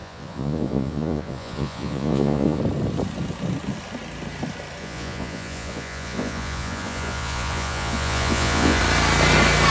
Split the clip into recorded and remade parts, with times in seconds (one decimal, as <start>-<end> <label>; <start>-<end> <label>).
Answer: 0.0-2.6 remade; 2.6-4.8 recorded; 4.8-8.8 remade; 8.8-9.7 recorded